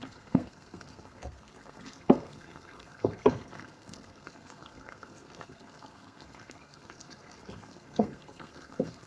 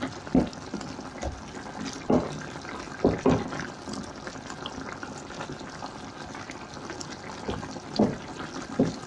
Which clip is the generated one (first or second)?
first